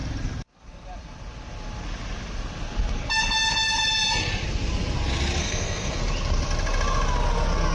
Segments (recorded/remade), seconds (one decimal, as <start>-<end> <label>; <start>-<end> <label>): 0.0-5.4 recorded; 5.4-6.0 remade; 6.0-7.7 recorded